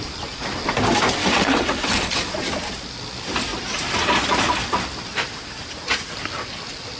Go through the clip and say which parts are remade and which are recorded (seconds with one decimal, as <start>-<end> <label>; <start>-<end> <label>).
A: 0.0-1.2 recorded; 1.2-2.2 remade; 2.2-7.0 recorded